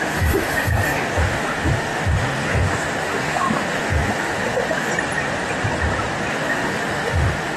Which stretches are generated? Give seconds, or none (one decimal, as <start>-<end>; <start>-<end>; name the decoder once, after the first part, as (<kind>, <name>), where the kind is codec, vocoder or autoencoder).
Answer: 0.0-4.9 (autoencoder, DAC-VAE); 6.3-7.6